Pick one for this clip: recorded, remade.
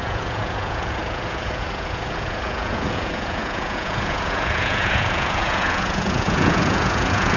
remade